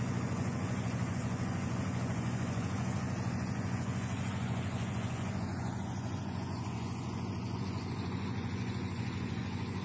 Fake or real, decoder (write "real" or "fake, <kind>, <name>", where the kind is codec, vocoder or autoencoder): fake, vocoder, Vocos